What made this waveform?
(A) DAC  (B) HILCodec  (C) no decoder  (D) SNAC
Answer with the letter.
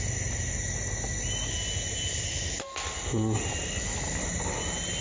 C